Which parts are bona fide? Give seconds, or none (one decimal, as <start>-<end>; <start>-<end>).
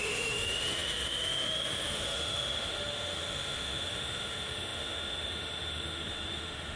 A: none